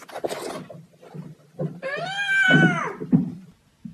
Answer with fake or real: real